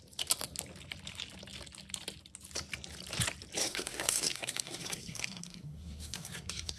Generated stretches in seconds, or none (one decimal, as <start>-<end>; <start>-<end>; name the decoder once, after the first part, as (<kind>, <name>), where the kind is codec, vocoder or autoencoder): 3.6-6.8 (codec, SNAC)